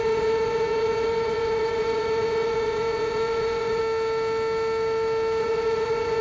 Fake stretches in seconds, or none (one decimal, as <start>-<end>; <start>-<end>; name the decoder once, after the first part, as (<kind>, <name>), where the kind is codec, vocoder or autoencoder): 0.0-3.8 (vocoder, Vocos); 5.4-6.2